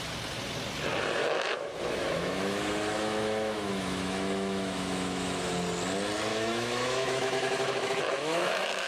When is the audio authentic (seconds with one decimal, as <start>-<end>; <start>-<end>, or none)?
0.0-1.2; 5.5-6.3